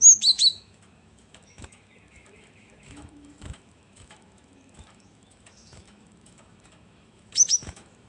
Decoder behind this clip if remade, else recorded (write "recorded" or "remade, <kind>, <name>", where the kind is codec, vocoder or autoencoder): remade, autoencoder, DAC-VAE